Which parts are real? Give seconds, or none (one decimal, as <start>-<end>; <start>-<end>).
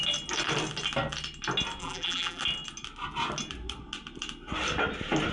0.0-1.8; 2.4-5.3